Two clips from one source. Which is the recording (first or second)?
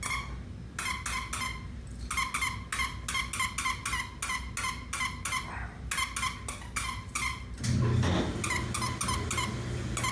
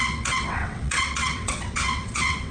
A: first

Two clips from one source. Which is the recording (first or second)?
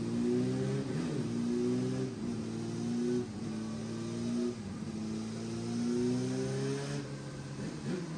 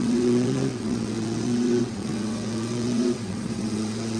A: first